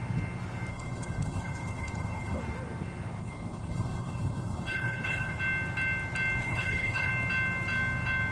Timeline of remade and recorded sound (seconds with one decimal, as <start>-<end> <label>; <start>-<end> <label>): 0.0-0.7 recorded; 0.7-2.4 remade; 2.4-3.2 recorded; 3.2-5.4 remade; 5.4-6.4 recorded; 6.4-7.1 remade; 7.1-8.3 recorded

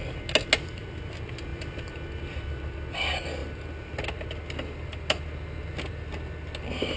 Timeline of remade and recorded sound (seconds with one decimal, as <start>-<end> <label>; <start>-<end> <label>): 0.0-7.0 recorded

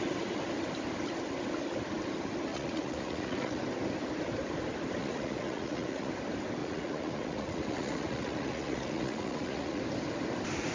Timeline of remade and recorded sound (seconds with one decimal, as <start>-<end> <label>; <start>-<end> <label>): 0.0-2.5 recorded; 2.5-3.6 remade; 3.6-5.0 recorded; 5.0-6.1 remade; 6.1-6.6 recorded; 6.6-9.8 remade; 9.8-10.7 recorded

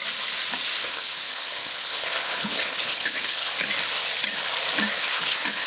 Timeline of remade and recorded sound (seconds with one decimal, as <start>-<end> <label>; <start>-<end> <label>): 0.0-0.8 recorded; 0.8-3.5 remade; 3.5-5.0 recorded; 5.0-5.7 remade

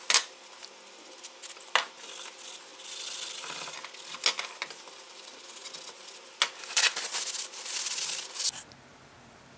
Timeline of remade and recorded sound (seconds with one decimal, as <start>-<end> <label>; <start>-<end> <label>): 0.0-8.9 recorded; 8.9-9.6 remade